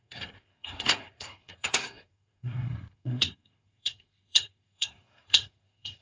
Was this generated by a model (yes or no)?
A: yes